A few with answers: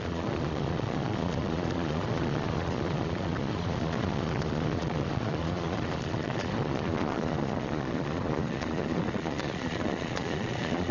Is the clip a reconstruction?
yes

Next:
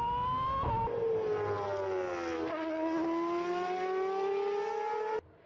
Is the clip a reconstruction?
no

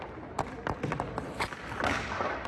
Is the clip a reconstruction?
no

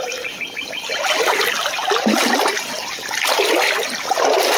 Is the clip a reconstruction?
no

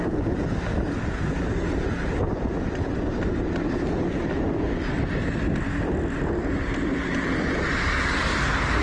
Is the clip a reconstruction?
no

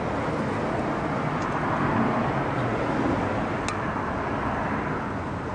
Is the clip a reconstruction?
no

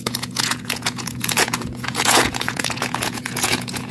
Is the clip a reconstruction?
yes